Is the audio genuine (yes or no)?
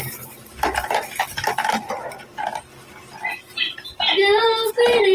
no